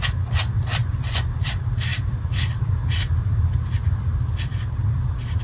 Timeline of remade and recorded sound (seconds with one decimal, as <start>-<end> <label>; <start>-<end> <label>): 0.0-0.8 recorded; 0.8-1.3 remade; 1.3-5.4 recorded